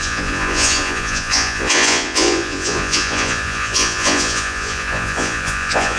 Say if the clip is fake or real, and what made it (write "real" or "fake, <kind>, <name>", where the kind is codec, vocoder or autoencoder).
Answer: fake, vocoder, Vocos